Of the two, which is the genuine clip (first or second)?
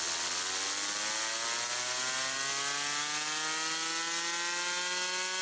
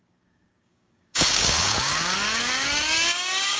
first